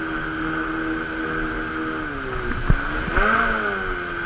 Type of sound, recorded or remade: recorded